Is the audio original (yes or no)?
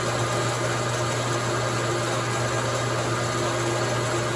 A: yes